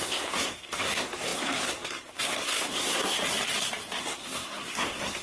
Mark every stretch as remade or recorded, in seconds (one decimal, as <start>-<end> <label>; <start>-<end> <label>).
0.0-3.2 remade; 3.2-4.0 recorded; 4.0-5.2 remade